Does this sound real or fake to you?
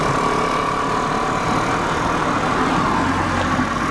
real